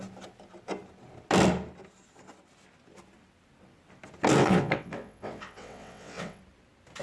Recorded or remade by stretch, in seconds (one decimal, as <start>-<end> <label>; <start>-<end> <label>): 0.0-4.4 recorded; 4.4-6.4 remade; 6.4-7.0 recorded